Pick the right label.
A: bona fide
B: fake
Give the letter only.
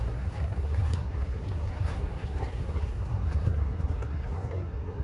B